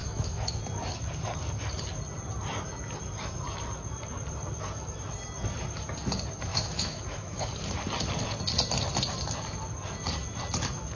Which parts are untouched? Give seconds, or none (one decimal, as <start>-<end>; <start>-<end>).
0.6-6.5; 7.5-11.0